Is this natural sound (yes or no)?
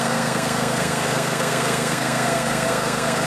no